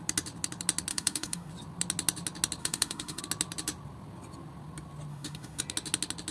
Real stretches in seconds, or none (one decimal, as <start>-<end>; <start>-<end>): 0.0-0.9; 1.5-2.6; 3.2-5.1; 5.6-6.3